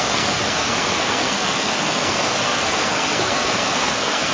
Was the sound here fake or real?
fake